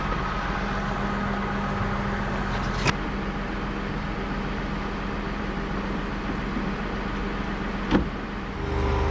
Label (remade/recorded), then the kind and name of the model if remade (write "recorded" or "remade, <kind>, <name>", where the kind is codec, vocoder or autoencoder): recorded